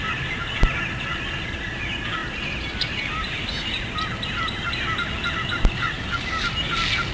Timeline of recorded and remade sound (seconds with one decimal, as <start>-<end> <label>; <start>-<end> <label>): 0.0-7.1 recorded